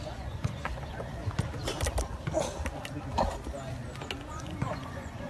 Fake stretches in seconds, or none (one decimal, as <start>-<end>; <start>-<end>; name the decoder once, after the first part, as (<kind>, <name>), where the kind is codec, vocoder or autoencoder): 0.0-1.1 (vocoder, Vocos); 4.3-5.3